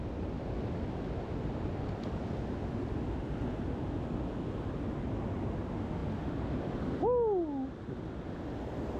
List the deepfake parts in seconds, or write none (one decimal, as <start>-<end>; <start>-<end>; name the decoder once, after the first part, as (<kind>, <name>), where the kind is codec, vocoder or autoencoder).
none